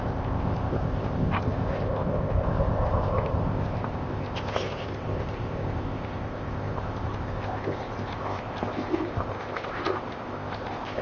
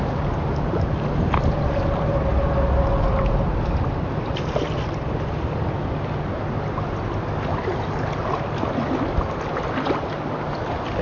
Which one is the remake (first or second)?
first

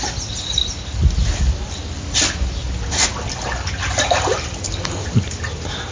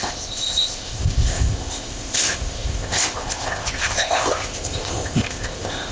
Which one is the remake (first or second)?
second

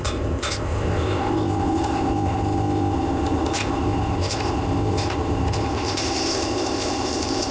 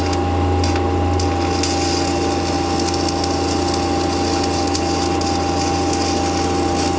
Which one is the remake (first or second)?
first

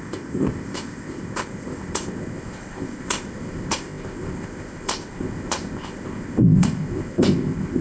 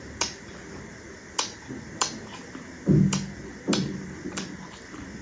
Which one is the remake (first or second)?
first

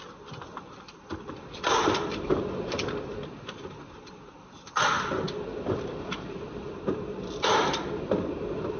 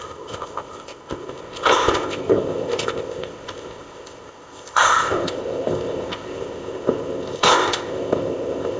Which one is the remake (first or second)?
second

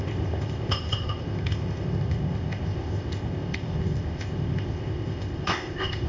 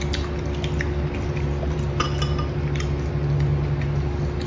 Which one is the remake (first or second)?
first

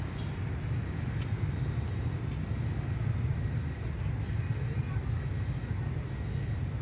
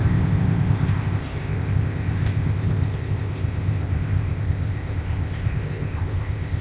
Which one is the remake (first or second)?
second